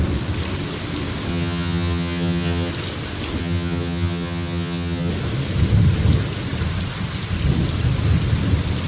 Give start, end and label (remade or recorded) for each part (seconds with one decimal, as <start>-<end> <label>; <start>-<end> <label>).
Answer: 0.0-1.3 recorded; 1.3-2.7 remade; 2.7-3.4 recorded; 3.4-5.1 remade; 5.1-8.9 recorded